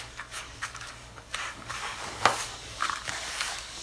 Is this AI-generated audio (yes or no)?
yes